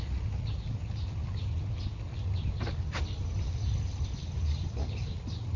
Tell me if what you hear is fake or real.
real